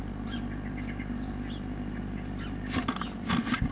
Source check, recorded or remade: recorded